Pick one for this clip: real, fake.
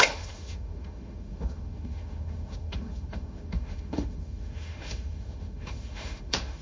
fake